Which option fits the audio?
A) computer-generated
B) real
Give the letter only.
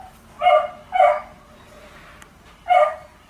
A